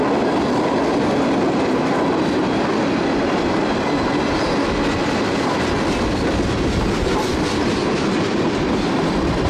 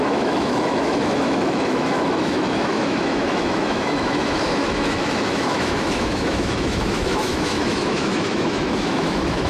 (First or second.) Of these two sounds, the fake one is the second